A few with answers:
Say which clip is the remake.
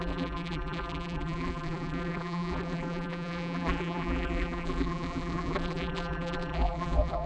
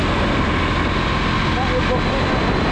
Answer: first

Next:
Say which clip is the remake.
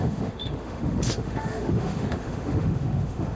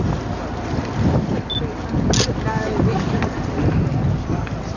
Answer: first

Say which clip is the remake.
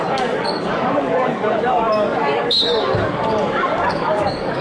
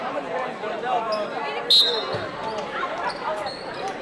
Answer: first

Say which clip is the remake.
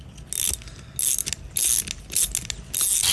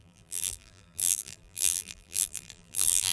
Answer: second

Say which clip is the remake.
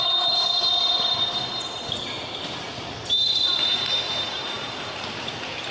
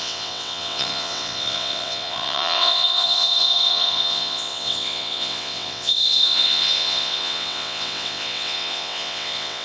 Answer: second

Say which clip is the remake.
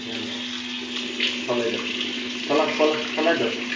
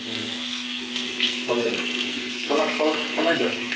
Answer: second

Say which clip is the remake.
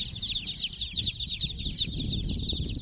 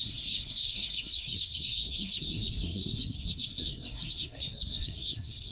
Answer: second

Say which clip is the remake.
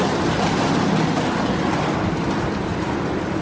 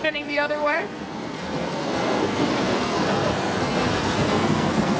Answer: second